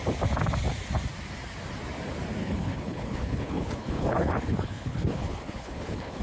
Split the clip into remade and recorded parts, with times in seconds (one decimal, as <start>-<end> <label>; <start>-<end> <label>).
0.0-2.4 recorded; 2.4-6.2 remade